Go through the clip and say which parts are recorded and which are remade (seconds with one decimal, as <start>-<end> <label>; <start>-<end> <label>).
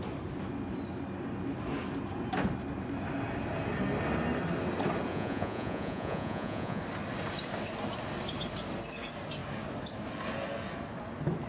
0.0-5.1 recorded; 5.1-6.8 remade; 6.8-11.5 recorded